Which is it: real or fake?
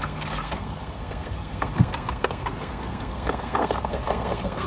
fake